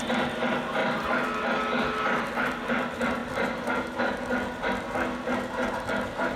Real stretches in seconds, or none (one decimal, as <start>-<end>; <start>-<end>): 0.0-6.4